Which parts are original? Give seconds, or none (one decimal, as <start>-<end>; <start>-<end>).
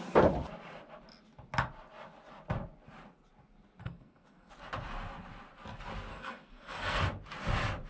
0.0-3.8; 4.5-6.1; 7.0-7.9